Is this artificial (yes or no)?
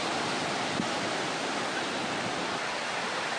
no